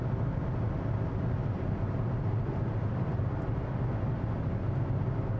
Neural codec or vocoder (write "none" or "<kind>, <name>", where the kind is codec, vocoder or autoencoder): none